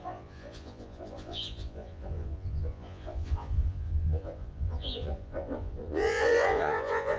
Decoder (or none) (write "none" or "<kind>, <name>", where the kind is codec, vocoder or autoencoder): vocoder, Vocos